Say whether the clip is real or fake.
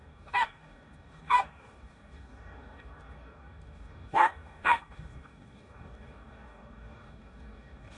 fake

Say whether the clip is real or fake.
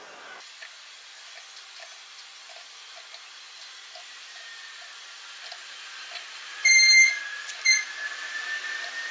real